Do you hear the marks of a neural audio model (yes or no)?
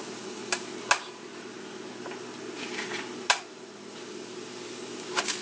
no